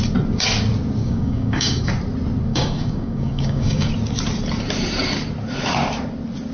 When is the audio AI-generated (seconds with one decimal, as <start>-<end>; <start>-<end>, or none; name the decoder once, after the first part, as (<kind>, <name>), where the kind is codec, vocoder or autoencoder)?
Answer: 1.0-1.9 (codec, DAC); 2.5-3.9